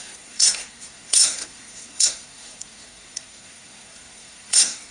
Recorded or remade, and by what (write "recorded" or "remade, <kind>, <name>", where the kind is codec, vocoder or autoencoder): remade, codec, SNAC